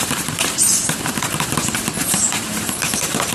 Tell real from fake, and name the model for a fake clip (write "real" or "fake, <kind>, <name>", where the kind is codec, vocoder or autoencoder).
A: fake, vocoder, BigVGAN v2